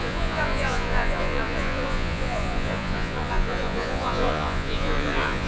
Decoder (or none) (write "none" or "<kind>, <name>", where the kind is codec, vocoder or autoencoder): vocoder, Vocos